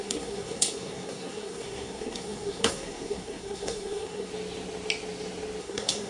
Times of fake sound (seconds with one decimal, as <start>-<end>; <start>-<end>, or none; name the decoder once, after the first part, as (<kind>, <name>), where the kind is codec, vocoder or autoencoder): 0.0-4.3 (codec, SNAC); 5.6-6.1

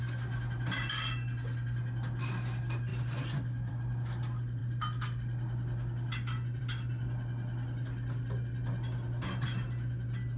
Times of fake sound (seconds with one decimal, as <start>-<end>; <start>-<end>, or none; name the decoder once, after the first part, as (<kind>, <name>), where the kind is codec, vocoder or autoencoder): none

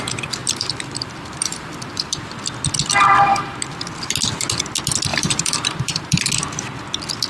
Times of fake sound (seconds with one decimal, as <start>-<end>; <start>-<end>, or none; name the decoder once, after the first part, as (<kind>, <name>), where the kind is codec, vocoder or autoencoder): 0.4-2.2 (vocoder, BigVGAN v2); 5.1-6.3

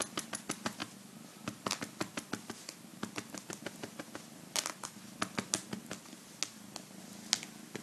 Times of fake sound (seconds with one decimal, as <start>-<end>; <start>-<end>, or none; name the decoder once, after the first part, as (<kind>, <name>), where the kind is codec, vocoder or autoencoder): none

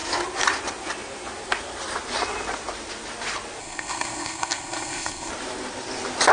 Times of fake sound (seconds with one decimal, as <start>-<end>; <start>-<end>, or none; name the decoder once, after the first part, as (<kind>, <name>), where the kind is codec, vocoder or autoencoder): 3.6-5.3 (codec, SNAC)

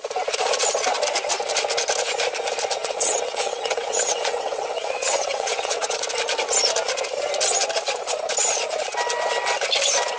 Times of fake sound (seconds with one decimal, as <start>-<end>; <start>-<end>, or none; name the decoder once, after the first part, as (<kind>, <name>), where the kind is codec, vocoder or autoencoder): 2.8-6.0 (vocoder, WaveNeXt)

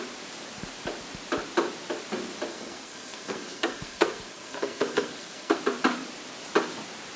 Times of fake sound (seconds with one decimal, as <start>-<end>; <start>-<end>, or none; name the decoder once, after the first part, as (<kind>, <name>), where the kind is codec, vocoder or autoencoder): 2.5-5.6 (codec, SNAC)

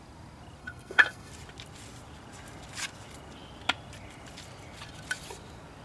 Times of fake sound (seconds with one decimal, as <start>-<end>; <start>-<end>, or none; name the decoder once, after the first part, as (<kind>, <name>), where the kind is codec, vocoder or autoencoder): 0.6-1.3 (codec, SNAC)